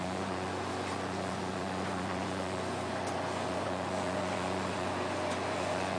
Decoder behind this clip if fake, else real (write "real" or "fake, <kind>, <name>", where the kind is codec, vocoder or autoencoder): fake, vocoder, Vocos